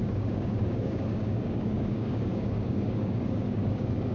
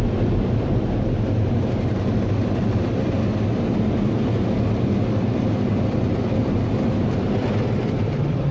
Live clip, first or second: second